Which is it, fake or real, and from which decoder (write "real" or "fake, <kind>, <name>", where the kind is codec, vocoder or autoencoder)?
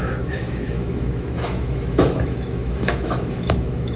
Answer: fake, autoencoder, DAC-VAE